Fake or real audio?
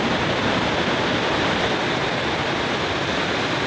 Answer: real